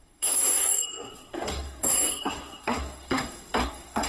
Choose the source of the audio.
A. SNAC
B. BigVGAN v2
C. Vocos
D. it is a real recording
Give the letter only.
A